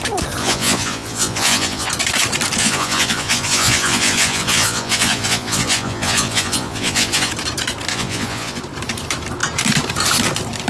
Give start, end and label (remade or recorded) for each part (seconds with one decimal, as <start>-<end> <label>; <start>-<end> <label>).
0.0-0.4 recorded; 0.4-1.9 remade; 1.9-2.6 recorded; 2.6-7.3 remade; 7.3-7.9 recorded; 7.9-8.6 remade; 8.6-10.7 recorded